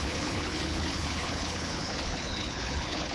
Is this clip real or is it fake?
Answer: fake